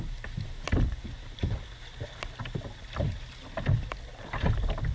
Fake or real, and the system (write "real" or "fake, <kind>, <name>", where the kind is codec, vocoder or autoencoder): real